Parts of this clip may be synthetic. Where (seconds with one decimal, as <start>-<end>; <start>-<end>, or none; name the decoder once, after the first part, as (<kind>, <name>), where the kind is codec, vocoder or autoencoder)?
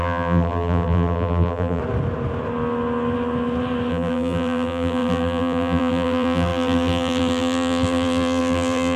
0.0-1.8 (vocoder, BigVGAN v2); 3.9-9.0